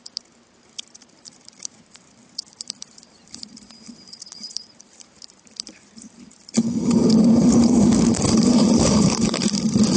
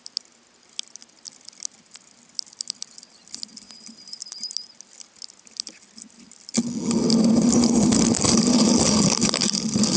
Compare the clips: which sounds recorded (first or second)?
second